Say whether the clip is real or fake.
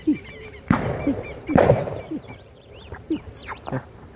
fake